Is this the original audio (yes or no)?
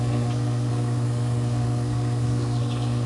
no